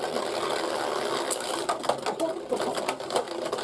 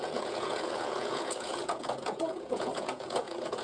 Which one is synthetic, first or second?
second